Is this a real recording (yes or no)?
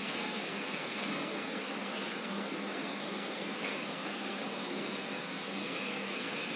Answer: no